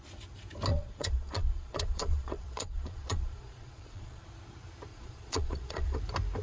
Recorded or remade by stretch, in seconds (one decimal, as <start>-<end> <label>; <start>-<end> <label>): 0.0-0.7 recorded; 0.7-4.2 remade; 4.2-4.9 recorded; 4.9-6.0 remade; 6.0-6.4 recorded